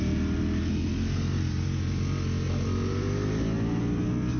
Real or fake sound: real